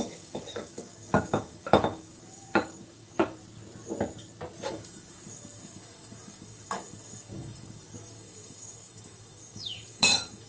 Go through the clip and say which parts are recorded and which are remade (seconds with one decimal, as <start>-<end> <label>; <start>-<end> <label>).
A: 0.0-3.4 remade; 3.4-4.7 recorded; 4.7-10.5 remade